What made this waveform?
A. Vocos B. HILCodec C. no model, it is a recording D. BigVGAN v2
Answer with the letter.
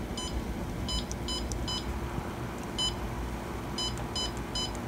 C